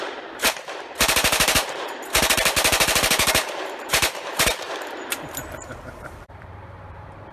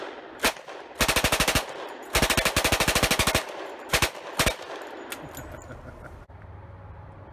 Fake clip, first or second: first